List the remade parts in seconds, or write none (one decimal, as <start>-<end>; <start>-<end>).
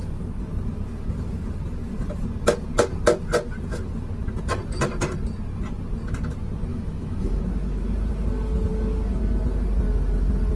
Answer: 6.7-7.4